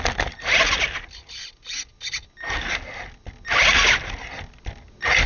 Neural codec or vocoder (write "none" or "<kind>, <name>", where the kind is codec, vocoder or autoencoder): none